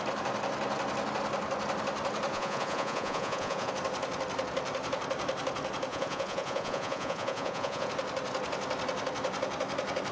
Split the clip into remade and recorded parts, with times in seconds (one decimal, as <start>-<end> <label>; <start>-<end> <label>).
0.0-2.3 recorded; 2.3-3.7 remade; 3.7-5.9 recorded; 5.9-7.9 remade; 7.9-10.1 recorded